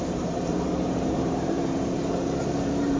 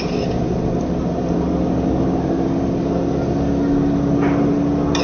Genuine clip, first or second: second